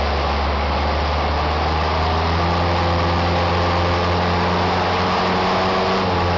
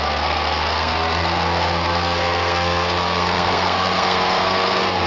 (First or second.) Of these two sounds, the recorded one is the first